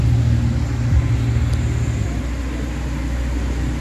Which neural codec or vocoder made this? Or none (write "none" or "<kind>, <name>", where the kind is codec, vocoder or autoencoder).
none